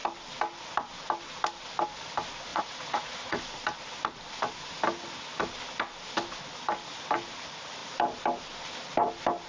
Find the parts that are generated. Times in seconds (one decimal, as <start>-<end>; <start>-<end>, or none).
2.5-3.4